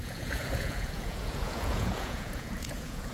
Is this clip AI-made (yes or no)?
yes